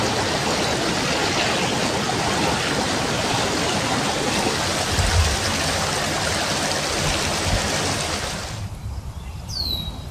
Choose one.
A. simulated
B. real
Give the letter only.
B